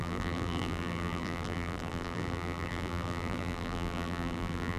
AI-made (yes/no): yes